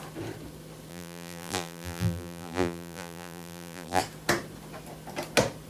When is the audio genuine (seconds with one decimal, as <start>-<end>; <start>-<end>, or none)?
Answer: 0.0-0.9; 4.0-5.7